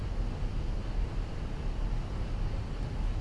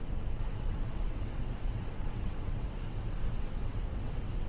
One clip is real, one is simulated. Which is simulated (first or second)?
second